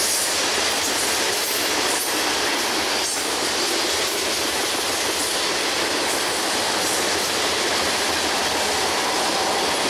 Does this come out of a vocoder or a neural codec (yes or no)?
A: no